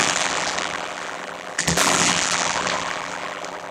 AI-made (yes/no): yes